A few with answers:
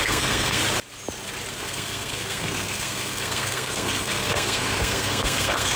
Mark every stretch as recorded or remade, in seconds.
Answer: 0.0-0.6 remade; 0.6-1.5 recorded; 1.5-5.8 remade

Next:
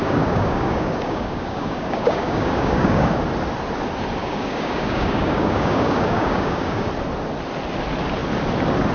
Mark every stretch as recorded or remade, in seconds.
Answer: 0.0-3.1 remade; 3.1-4.2 recorded; 4.2-6.9 remade; 6.9-8.9 recorded

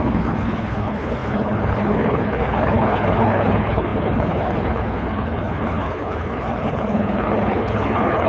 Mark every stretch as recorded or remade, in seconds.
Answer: 0.0-8.3 remade

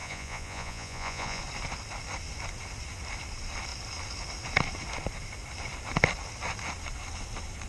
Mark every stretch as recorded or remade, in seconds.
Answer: 0.0-1.4 remade; 1.4-7.7 recorded

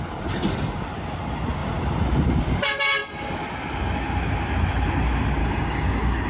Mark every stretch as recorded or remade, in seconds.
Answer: 0.0-5.4 recorded; 5.4-6.3 remade

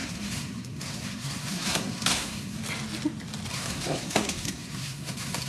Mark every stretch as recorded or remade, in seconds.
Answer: 0.0-2.6 remade; 2.6-3.5 recorded; 3.5-5.5 remade

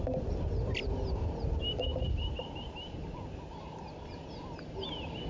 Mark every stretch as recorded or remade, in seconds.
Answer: 0.0-5.3 recorded

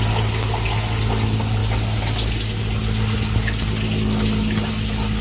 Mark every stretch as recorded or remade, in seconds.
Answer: 0.0-5.2 recorded